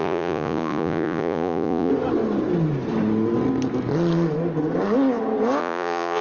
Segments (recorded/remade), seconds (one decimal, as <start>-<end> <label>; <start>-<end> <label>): 0.0-1.9 remade; 1.9-5.6 recorded; 5.6-6.2 remade